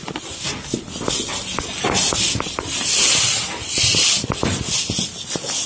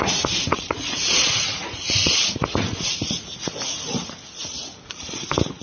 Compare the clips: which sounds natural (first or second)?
first